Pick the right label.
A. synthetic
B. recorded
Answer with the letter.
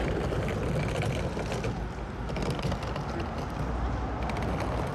B